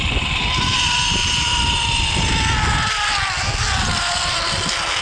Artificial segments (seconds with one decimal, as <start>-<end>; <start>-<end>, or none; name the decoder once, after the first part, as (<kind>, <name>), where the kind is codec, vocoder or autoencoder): none